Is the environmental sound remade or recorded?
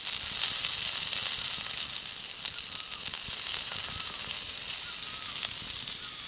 recorded